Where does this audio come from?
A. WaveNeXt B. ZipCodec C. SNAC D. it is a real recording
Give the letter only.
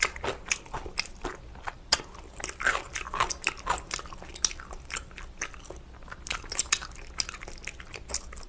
D